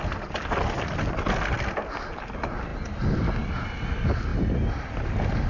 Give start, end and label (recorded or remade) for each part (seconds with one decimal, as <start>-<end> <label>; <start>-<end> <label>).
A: 0.0-5.5 recorded